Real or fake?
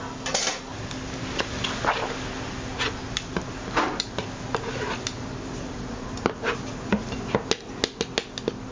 real